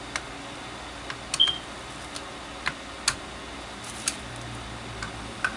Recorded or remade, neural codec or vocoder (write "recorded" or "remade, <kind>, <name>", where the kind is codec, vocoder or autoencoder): recorded